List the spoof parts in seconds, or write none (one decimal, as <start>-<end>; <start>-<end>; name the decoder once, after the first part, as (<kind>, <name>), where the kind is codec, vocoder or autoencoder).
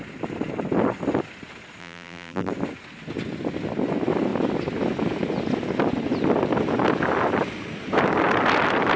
1.8-2.5 (vocoder, BigVGAN v2)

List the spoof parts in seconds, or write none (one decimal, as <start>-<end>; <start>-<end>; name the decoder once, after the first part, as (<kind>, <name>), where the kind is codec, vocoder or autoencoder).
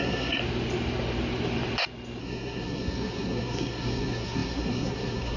0.0-0.4 (codec, SNAC); 2.2-5.4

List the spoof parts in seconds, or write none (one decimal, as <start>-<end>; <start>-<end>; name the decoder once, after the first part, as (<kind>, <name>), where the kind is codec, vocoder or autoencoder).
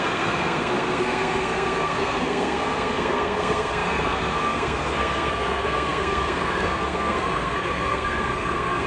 0.0-8.9 (codec, SNAC)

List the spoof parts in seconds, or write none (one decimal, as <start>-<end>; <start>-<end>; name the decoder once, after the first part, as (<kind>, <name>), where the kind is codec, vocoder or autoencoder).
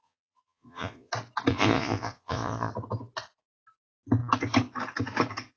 0.0-1.1 (vocoder, Vocos); 1.5-2.7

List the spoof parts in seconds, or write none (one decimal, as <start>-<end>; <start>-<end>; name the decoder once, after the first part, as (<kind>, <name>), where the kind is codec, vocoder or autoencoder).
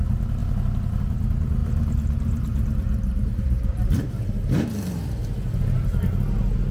1.6-5.6 (vocoder, BigVGAN v2)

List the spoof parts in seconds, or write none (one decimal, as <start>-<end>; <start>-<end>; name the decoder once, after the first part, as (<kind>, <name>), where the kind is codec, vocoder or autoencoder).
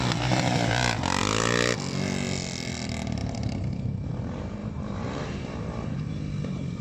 3.2-3.9 (vocoder, BigVGAN v2); 4.6-6.0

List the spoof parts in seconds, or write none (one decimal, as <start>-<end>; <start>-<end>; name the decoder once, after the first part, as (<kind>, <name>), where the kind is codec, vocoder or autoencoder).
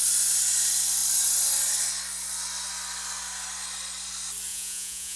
4.5-5.2 (vocoder, Vocos)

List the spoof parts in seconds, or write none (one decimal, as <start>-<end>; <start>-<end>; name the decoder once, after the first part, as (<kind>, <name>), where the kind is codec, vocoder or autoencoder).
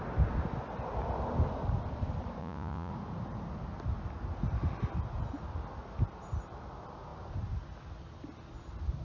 2.4-2.9 (vocoder, Vocos)